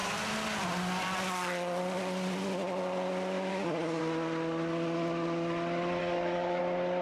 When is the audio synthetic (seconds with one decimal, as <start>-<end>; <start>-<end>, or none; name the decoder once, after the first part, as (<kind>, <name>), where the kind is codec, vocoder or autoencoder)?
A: 3.5-4.0 (codec, DAC); 6.0-6.6